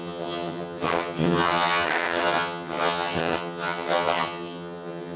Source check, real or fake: fake